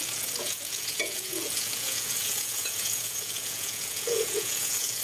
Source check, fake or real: fake